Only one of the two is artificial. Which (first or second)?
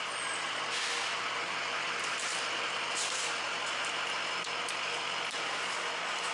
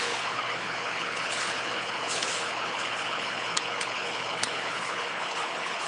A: second